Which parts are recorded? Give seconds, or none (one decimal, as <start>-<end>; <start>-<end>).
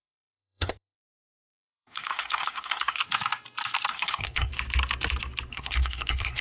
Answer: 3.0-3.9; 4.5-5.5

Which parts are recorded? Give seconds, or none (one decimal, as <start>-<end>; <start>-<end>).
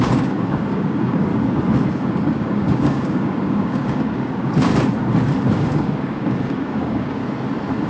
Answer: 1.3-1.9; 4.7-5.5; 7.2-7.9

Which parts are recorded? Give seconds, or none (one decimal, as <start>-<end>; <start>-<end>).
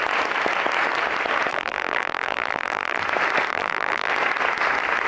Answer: 0.0-1.5; 3.0-3.5; 4.1-5.1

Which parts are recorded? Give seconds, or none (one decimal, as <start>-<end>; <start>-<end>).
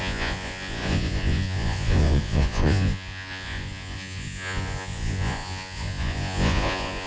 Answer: none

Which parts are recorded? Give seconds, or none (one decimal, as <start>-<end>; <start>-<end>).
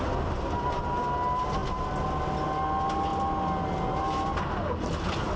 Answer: 0.0-5.4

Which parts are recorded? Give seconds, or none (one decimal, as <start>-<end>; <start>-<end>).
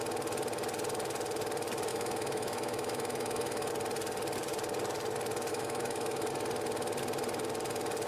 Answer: 0.0-1.9; 3.7-5.5; 6.3-8.1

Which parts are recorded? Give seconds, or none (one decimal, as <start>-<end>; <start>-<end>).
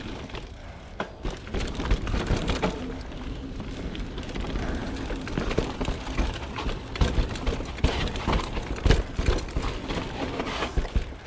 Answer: 0.0-11.3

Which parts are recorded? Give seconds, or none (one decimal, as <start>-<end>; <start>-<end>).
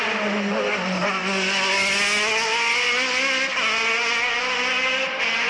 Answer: 0.0-5.5